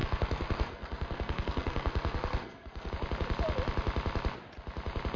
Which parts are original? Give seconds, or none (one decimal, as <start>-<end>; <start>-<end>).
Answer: 2.9-5.2